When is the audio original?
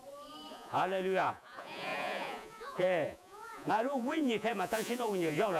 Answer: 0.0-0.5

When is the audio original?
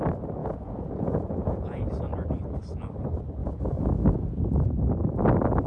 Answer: 0.0-0.4; 1.8-3.4; 4.5-5.7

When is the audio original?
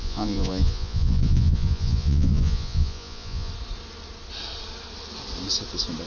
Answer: 3.5-6.1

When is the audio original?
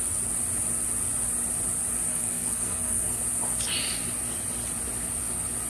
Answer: 0.0-2.1; 3.2-5.7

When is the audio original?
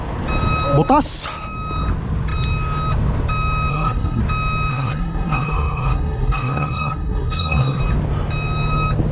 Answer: 0.0-3.7; 4.2-4.7; 7.8-9.1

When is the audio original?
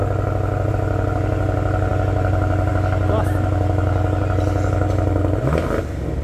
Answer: 0.0-6.2